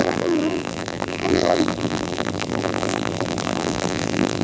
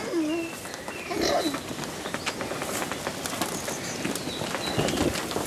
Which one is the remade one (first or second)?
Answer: first